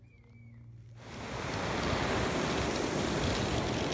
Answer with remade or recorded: recorded